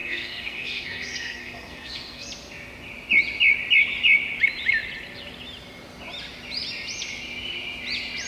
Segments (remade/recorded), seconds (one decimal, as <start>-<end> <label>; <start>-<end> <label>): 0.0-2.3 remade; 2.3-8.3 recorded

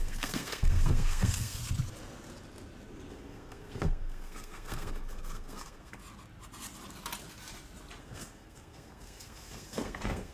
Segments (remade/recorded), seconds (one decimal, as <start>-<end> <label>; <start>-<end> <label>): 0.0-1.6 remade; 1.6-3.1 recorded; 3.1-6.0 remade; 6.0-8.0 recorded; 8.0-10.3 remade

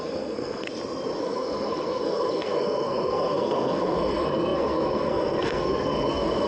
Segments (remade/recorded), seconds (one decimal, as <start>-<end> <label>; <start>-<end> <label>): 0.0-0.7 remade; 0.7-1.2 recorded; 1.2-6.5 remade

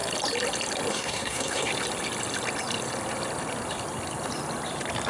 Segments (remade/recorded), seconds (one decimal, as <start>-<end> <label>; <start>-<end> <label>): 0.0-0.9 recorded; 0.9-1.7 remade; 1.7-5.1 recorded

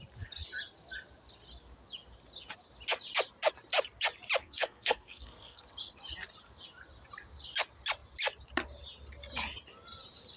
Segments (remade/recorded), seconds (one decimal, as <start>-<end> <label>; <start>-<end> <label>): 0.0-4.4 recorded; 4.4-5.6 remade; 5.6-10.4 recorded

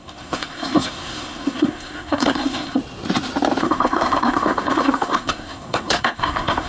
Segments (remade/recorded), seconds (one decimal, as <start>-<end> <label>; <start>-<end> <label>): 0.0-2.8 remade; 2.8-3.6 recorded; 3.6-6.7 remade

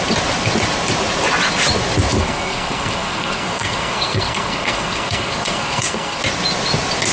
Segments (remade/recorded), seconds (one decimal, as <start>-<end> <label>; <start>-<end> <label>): 0.0-2.2 recorded; 2.2-6.2 remade; 6.2-7.1 recorded